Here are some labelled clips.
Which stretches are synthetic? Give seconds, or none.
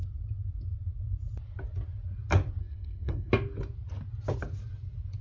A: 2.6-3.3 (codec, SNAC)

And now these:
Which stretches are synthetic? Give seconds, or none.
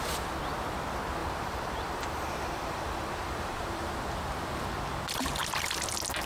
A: 1.2-3.9 (vocoder, BigVGAN v2)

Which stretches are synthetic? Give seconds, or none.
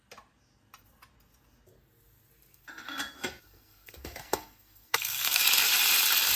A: 2.5-5.4 (codec, SNAC)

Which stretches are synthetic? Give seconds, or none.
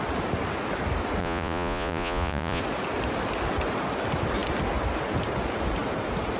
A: 1.2-2.6 (vocoder, Vocos)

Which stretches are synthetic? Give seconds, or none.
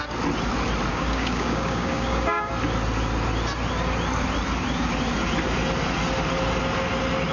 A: 0.9-2.5 (codec, DAC)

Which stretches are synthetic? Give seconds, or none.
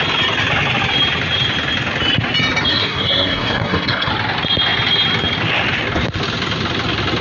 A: 2.7-4.1 (codec, SNAC)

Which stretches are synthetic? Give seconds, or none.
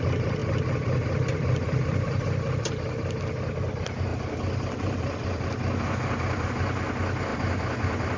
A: 0.4-3.1 (vocoder, BigVGAN v2); 4.1-6.5; 7.3-8.2